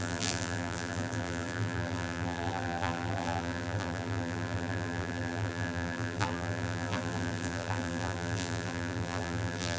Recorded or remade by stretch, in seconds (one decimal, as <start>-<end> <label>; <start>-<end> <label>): 0.0-9.8 remade